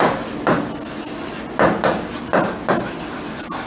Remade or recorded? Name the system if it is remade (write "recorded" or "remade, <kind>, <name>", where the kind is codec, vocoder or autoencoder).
recorded